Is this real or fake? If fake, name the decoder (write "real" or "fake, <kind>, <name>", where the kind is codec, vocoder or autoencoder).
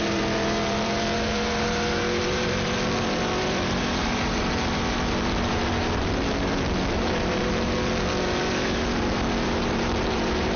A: fake, vocoder, BigVGAN v2